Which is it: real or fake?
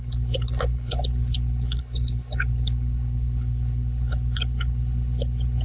fake